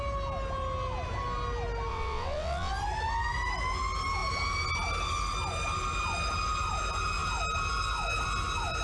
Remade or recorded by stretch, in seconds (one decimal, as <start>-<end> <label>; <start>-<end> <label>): 0.0-1.9 recorded; 1.9-2.7 remade; 2.7-8.8 recorded